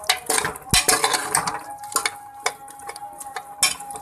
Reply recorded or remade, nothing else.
recorded